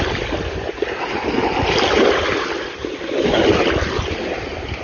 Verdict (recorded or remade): recorded